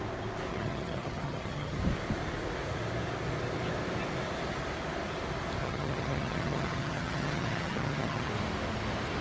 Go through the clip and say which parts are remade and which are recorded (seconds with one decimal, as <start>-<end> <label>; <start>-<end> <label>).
0.0-0.5 recorded; 0.5-1.8 remade; 1.8-5.6 recorded; 5.6-8.3 remade; 8.3-9.2 recorded